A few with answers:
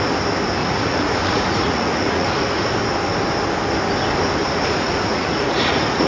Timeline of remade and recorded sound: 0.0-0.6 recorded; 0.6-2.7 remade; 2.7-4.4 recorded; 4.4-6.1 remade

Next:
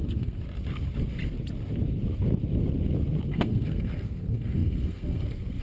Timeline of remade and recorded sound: 0.0-0.4 remade; 0.4-3.3 recorded; 3.3-5.6 remade

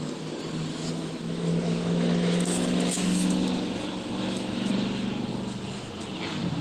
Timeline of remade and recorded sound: 0.0-0.7 recorded; 0.7-4.7 remade; 4.7-6.6 recorded

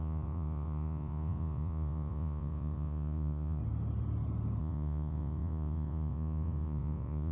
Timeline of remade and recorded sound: 0.0-3.6 remade; 3.6-4.6 recorded; 4.6-7.3 remade

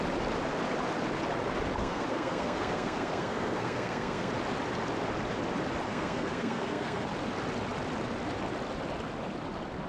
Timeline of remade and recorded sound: 0.0-1.8 recorded; 1.8-4.3 remade; 4.3-5.9 recorded; 5.9-7.1 remade; 7.1-9.9 recorded